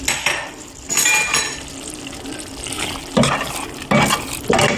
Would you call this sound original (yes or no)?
yes